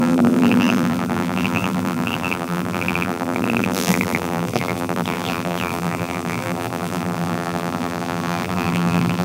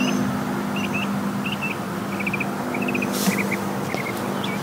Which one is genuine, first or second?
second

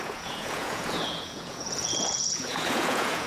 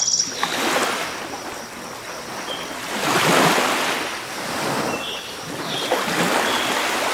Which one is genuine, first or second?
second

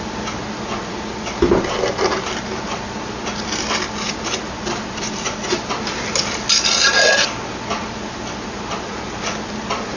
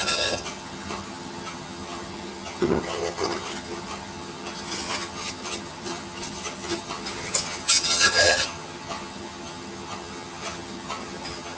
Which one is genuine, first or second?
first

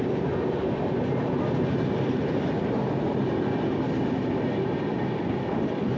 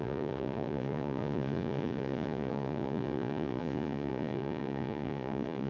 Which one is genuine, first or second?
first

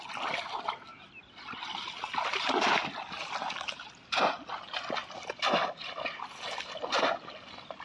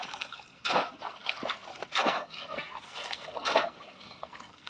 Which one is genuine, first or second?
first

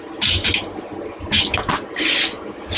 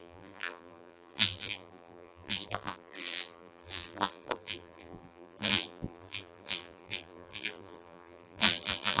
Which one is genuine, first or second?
first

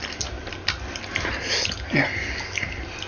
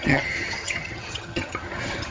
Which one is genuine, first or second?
first